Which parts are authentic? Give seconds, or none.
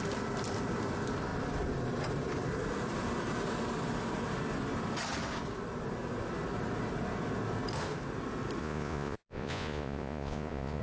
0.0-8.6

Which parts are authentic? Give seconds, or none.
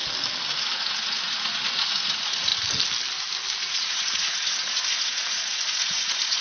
0.0-0.6; 2.5-3.6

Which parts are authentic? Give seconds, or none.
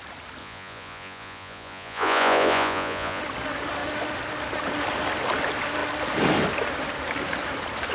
0.0-0.4; 3.2-7.9